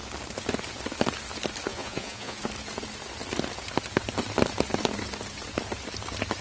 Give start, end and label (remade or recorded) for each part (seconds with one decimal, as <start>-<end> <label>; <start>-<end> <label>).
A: 0.0-1.7 recorded; 1.7-2.4 remade; 2.4-6.4 recorded